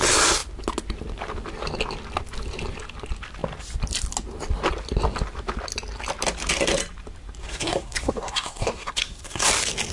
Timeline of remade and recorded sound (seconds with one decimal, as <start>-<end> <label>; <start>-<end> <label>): 0.0-7.4 recorded; 7.4-9.5 remade; 9.5-9.9 recorded